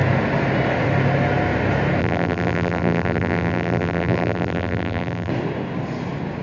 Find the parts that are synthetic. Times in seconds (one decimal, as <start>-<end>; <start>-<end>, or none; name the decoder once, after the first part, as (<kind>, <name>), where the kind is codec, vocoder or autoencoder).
2.0-5.3 (vocoder, BigVGAN v2)